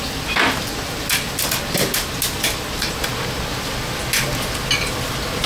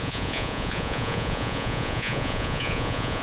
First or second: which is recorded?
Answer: first